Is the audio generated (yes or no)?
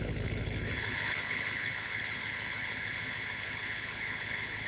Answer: yes